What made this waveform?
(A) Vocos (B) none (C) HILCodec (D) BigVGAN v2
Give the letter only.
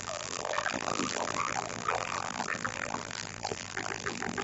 D